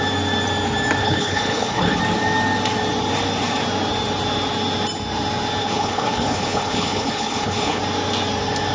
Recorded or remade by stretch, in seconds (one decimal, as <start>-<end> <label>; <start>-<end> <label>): 0.0-1.0 recorded; 1.0-2.0 remade; 2.0-5.6 recorded; 5.6-7.8 remade; 7.8-8.7 recorded